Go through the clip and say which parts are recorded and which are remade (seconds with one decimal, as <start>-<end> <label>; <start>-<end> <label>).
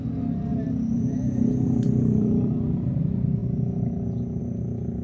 0.0-0.5 recorded; 0.5-3.0 remade; 3.0-5.0 recorded